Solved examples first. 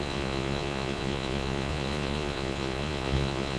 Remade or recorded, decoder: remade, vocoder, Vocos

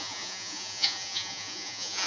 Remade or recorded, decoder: remade, vocoder, Vocos